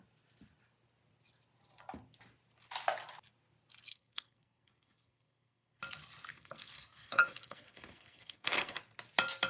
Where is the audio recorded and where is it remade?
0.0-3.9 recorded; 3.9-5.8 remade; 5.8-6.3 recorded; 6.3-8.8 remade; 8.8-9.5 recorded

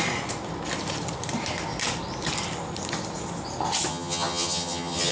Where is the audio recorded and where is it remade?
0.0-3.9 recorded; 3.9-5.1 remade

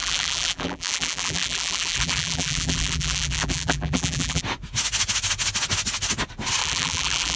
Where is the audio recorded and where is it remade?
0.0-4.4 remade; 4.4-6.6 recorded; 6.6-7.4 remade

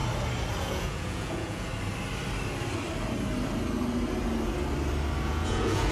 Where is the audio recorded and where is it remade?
0.0-0.6 recorded; 0.6-1.7 remade; 1.7-5.2 recorded; 5.2-5.9 remade

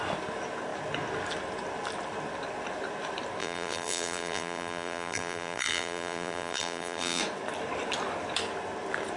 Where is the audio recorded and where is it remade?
0.0-3.4 recorded; 3.4-7.2 remade; 7.2-9.2 recorded

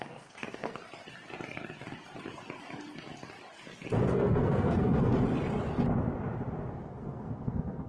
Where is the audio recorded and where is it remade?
0.0-0.8 remade; 0.8-4.1 recorded; 4.1-5.1 remade; 5.1-6.7 recorded; 6.7-7.9 remade